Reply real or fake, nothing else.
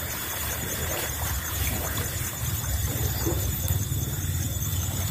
fake